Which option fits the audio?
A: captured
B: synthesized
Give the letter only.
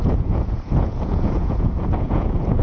B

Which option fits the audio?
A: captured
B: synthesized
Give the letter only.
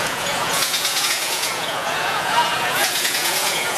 B